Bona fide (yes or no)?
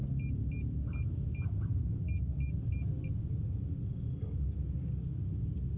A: yes